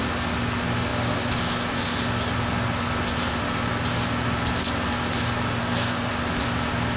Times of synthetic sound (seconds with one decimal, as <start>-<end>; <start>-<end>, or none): 5.6-6.1